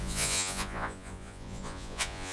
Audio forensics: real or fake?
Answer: fake